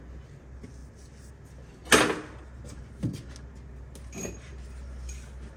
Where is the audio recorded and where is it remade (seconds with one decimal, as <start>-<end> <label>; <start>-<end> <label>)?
0.0-5.6 recorded